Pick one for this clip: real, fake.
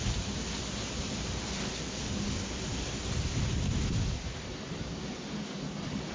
real